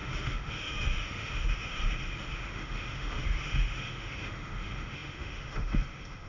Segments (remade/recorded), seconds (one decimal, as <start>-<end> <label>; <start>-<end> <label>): 0.0-1.8 remade; 1.8-2.5 recorded; 2.5-6.3 remade